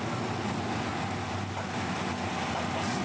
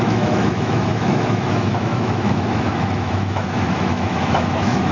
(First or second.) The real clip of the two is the first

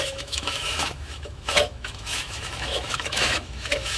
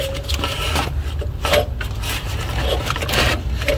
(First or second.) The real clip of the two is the second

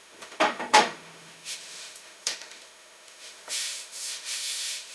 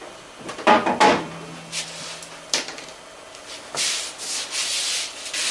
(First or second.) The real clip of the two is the second